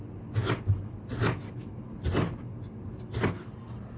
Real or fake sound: real